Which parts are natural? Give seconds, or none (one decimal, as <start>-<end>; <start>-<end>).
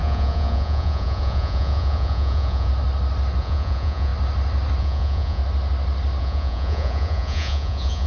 2.7-3.4; 4.1-4.8; 5.4-6.2